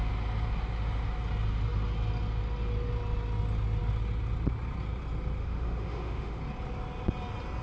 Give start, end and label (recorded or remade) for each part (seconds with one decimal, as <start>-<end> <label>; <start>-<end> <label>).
0.0-5.4 recorded; 5.4-6.4 remade; 6.4-7.6 recorded